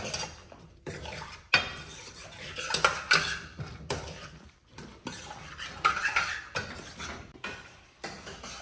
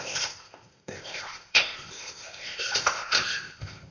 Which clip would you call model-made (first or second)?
second